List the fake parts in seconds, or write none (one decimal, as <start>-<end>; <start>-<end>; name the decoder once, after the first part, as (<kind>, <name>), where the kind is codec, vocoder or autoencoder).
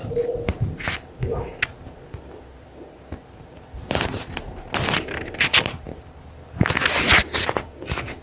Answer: none